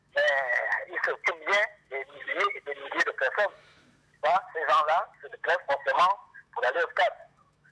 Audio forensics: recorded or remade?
remade